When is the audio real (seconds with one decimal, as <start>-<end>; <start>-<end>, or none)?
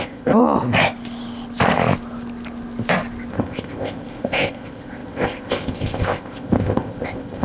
0.4-3.3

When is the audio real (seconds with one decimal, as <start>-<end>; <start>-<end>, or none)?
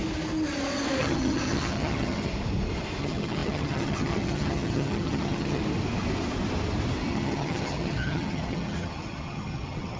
0.0-1.0; 2.3-3.0; 5.6-7.1